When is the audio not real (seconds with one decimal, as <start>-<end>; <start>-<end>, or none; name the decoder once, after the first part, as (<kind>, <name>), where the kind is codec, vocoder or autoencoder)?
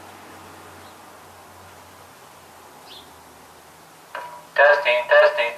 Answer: none